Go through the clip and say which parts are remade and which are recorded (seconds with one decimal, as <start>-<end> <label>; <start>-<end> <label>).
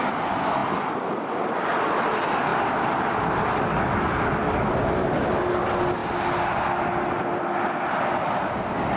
0.0-2.5 recorded; 2.5-3.5 remade; 3.5-6.0 recorded; 6.0-6.6 remade; 6.6-9.0 recorded